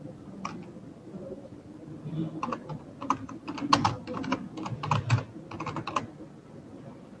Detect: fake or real real